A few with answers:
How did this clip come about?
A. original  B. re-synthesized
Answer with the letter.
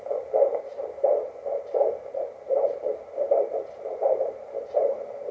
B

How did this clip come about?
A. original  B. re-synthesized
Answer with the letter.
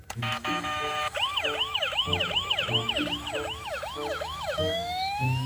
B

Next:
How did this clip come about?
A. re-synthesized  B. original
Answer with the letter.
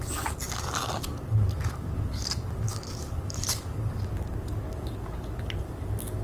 A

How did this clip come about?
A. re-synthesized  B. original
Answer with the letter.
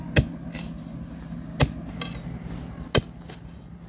B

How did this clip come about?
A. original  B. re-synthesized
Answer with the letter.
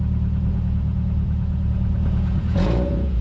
B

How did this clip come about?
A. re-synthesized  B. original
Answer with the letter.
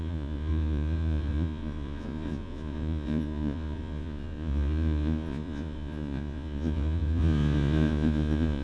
A